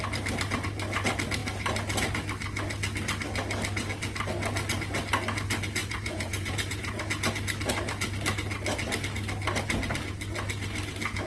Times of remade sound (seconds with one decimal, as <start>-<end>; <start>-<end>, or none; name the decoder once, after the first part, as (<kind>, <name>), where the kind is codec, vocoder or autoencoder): 5.8-7.0 (vocoder, Vocos)

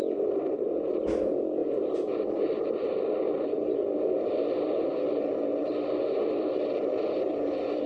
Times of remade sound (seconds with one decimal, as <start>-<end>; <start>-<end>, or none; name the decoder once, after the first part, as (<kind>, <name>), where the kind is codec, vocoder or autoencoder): none

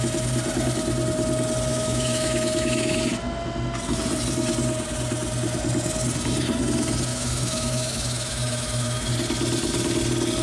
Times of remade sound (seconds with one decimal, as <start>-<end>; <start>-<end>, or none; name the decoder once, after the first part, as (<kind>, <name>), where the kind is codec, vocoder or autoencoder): 1.7-3.0 (autoencoder, DAC-VAE); 7.1-9.1